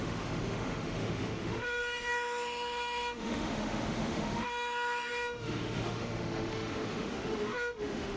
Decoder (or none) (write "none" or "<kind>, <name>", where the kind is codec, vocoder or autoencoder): autoencoder, DAC-VAE